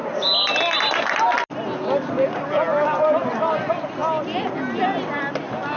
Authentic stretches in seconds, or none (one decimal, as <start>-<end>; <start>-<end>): 0.0-5.8